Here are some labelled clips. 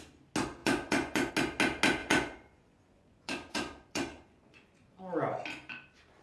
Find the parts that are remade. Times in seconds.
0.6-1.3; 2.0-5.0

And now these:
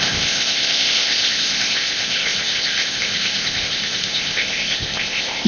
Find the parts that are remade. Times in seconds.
0.0-5.5

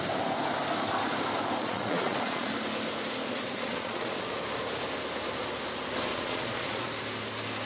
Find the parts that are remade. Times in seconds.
1.6-2.5; 3.2-4.3; 6.1-6.9

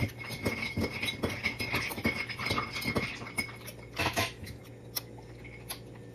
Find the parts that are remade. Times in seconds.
4.0-4.6